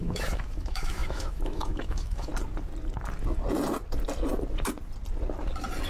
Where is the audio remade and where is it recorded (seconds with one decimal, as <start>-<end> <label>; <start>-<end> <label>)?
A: 0.0-2.3 remade; 2.3-5.9 recorded